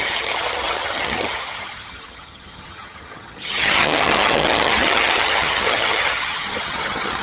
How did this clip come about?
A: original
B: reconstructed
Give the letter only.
B